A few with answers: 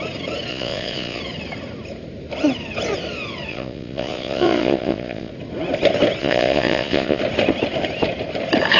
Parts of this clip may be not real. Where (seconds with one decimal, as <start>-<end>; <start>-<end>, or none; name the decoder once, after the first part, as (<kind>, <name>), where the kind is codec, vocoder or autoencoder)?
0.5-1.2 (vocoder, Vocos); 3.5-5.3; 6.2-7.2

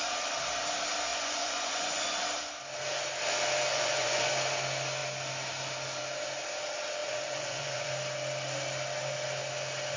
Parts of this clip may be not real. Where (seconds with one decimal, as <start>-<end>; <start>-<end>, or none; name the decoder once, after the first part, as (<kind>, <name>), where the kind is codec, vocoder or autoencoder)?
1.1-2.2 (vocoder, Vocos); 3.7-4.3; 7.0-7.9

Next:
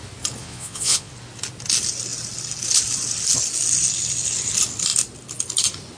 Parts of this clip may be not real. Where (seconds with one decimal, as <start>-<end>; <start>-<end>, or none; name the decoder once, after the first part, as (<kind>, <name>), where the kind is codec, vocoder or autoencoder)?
0.4-1.1 (vocoder, Vocos)